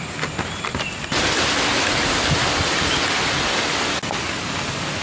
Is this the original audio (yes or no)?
yes